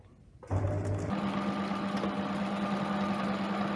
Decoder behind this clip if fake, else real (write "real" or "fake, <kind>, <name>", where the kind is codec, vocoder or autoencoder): real